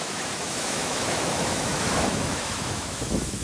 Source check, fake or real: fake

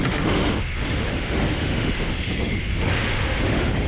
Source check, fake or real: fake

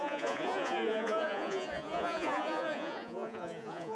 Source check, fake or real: fake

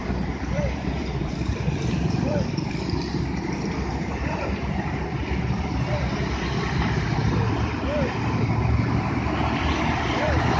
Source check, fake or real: fake